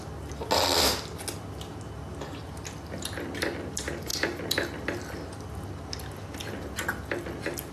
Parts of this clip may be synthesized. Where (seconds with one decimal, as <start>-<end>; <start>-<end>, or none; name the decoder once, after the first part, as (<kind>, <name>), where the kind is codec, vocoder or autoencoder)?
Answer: none